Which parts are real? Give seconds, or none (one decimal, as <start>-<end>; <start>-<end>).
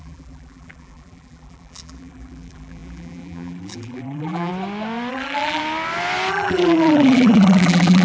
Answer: 4.5-5.1; 5.6-6.3